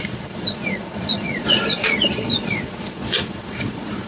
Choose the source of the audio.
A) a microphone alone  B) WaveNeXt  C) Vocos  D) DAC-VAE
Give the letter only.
C